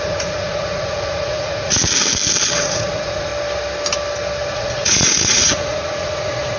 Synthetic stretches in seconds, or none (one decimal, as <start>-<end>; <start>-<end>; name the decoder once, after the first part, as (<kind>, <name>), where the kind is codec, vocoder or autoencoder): 0.0-1.8 (vocoder, Vocos); 2.6-3.3; 4.5-6.6